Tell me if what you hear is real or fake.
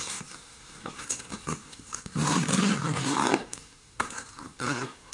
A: fake